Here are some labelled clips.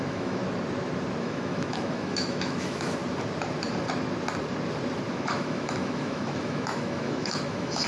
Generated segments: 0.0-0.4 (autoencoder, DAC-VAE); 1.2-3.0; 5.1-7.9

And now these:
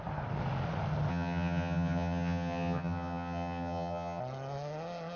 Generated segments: 1.1-4.2 (vocoder, HiFi-GAN)

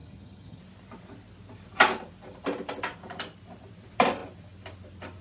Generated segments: 0.0-0.6 (vocoder, HiFi-GAN)

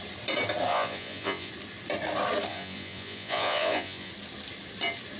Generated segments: 0.7-1.5 (vocoder, Vocos); 2.5-4.1

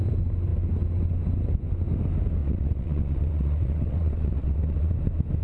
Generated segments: 2.4-4.9 (vocoder, WaveNeXt)